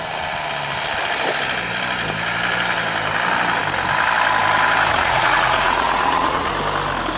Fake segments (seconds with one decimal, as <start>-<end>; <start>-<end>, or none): 4.9-6.5